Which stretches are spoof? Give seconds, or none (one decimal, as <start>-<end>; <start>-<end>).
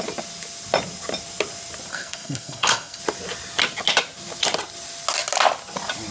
1.9-3.0